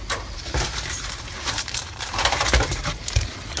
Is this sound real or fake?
fake